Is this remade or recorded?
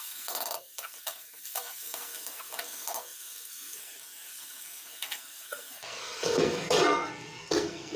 remade